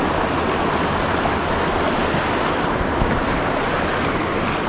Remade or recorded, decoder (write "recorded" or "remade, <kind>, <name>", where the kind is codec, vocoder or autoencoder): recorded